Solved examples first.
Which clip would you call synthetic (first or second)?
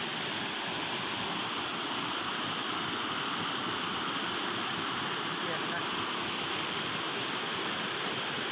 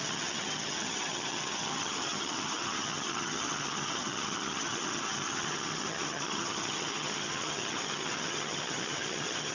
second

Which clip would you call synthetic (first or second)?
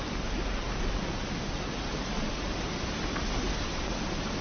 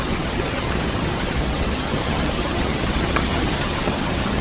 second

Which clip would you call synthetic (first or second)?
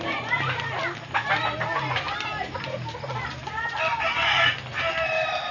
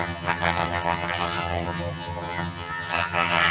second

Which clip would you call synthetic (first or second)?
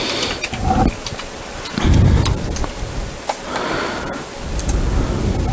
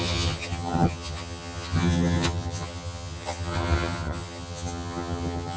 second